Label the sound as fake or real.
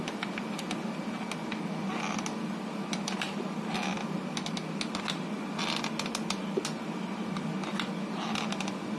real